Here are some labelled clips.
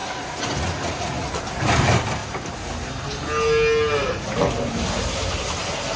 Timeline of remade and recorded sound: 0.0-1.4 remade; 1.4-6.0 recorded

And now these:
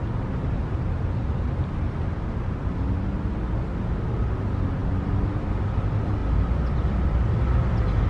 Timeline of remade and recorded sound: 0.0-8.1 recorded

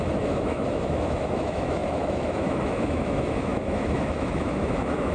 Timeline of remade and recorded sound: 0.0-5.1 remade

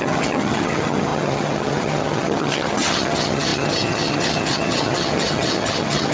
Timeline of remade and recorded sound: 0.0-6.1 remade